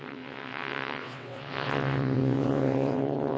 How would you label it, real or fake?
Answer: fake